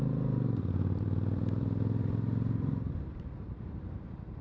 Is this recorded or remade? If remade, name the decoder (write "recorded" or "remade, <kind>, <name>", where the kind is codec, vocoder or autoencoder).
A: remade, vocoder, BigVGAN v2